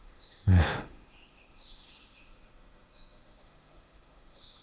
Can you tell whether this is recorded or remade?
remade